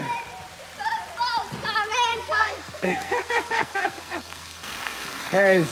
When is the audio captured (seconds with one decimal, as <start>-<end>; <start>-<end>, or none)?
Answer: 0.0-2.1